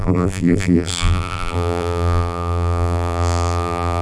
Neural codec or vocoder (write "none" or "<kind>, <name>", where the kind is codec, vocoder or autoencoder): vocoder, BigVGAN v2